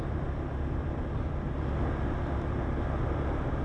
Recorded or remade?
recorded